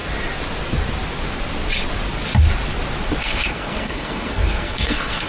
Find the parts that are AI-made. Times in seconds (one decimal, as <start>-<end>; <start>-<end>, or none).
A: 3.2-5.3